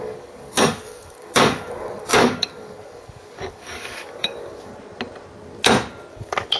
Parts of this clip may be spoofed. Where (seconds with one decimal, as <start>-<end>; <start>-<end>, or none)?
0.0-4.7; 6.1-6.6